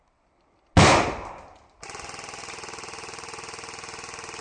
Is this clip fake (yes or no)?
no